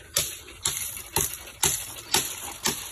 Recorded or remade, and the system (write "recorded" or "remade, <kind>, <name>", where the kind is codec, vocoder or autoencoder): recorded